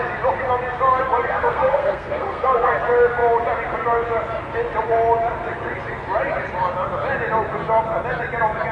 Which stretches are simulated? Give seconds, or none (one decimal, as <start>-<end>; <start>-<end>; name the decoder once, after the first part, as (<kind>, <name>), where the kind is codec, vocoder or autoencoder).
1.2-2.7 (codec, SNAC)